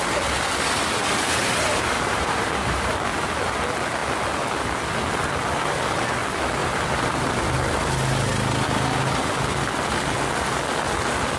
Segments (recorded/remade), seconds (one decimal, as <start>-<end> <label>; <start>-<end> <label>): 0.0-1.4 recorded; 1.4-2.9 remade; 2.9-6.6 recorded; 6.6-7.4 remade; 7.4-11.4 recorded